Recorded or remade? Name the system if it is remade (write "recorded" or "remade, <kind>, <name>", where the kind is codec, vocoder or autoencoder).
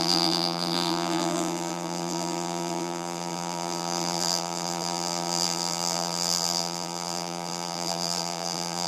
remade, vocoder, BigVGAN v2